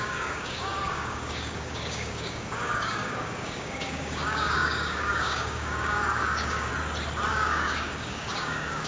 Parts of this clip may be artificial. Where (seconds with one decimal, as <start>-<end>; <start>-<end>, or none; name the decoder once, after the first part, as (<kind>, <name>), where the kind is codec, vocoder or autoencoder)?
0.0-6.7 (codec, DAC); 7.3-8.9